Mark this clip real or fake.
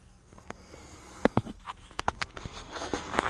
fake